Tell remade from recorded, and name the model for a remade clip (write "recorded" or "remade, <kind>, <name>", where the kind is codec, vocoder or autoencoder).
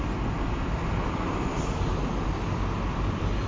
recorded